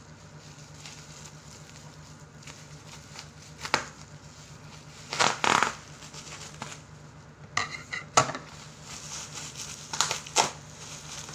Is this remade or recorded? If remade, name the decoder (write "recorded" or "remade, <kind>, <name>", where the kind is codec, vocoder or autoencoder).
recorded